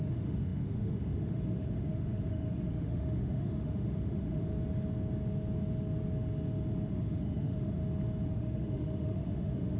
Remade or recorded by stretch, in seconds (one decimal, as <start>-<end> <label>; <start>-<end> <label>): 0.0-4.5 remade; 4.5-6.9 recorded; 6.9-7.8 remade; 7.8-8.3 recorded; 8.3-9.8 remade